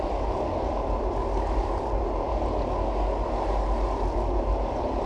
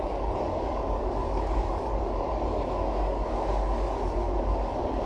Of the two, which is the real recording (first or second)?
first